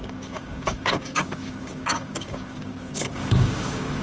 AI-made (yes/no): yes